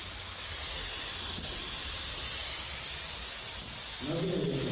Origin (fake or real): real